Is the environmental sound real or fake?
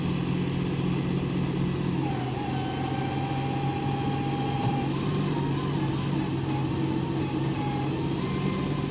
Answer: real